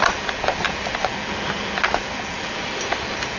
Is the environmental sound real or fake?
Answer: real